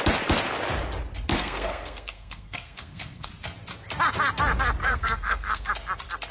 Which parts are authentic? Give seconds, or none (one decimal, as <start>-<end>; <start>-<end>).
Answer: 0.0-1.3; 3.3-4.8; 5.7-6.3